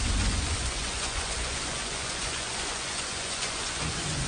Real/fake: fake